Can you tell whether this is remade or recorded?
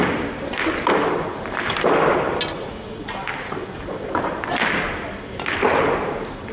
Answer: recorded